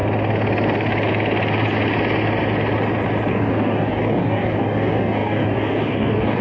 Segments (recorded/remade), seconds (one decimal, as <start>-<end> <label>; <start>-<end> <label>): 0.0-3.3 recorded; 3.3-6.4 remade